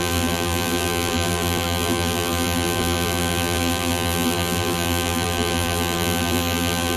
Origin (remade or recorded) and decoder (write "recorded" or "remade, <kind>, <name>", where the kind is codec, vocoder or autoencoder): remade, vocoder, BigVGAN v2